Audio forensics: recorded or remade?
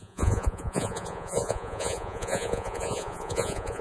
remade